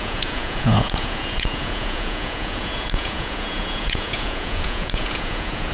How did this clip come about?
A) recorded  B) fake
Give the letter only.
B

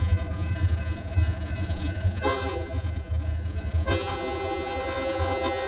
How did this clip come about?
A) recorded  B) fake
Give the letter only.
B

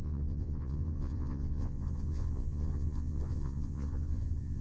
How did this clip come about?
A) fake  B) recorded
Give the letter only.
A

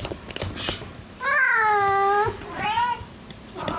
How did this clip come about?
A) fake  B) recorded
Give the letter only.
B